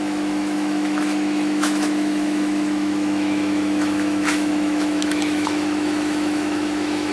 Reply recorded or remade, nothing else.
remade